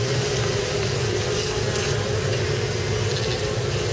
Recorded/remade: recorded